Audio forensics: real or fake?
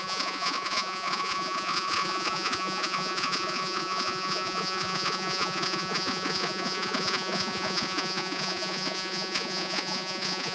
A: fake